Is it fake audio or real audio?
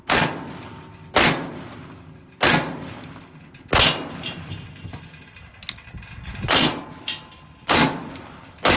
real